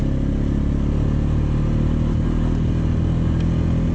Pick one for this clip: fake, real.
real